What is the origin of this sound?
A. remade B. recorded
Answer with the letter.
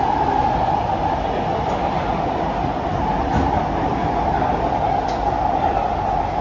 B